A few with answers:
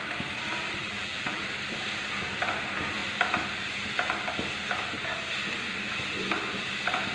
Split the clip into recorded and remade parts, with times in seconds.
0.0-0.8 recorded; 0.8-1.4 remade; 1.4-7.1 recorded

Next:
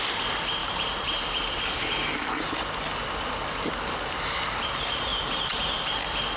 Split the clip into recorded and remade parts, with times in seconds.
0.0-0.6 recorded; 0.6-1.6 remade; 1.6-5.1 recorded; 5.1-5.8 remade; 5.8-6.4 recorded

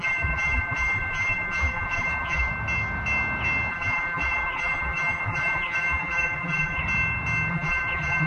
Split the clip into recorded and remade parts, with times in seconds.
0.0-2.5 remade; 2.5-3.7 recorded; 3.7-6.8 remade; 6.8-7.5 recorded; 7.5-8.3 remade